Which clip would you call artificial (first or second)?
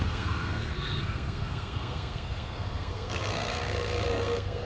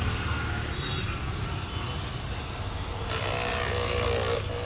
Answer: first